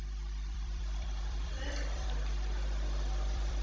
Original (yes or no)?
no